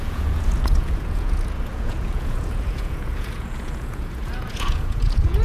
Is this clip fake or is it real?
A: fake